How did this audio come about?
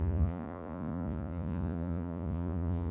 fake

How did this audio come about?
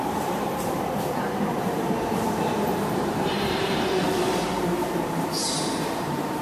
fake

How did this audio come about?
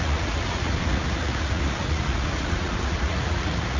fake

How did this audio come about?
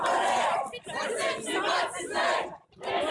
real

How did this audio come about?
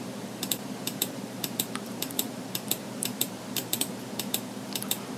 fake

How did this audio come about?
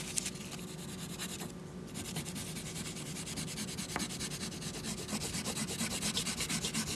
real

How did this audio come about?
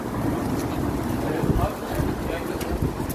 real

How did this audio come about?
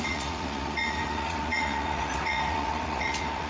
fake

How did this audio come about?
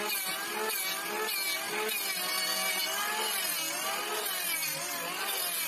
real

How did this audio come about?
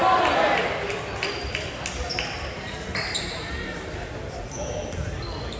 real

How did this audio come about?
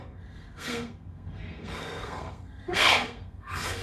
fake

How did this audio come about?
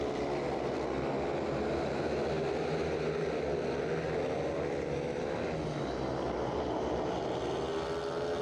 real